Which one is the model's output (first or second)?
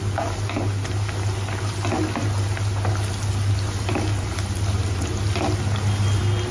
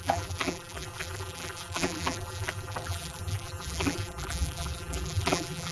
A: second